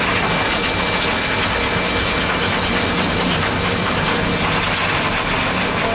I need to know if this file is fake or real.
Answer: real